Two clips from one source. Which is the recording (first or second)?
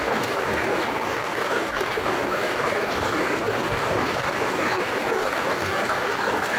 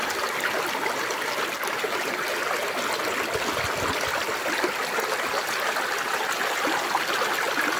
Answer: second